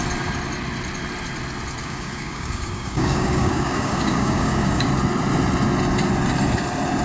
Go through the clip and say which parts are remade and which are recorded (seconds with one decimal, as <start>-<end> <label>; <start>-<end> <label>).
0.0-1.8 recorded; 1.8-4.9 remade; 4.9-7.0 recorded